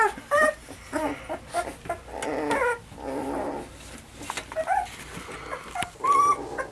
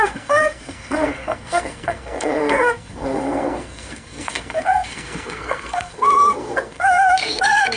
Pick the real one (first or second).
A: first